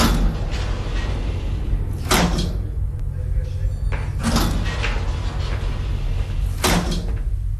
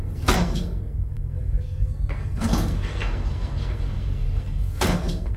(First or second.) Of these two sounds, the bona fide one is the first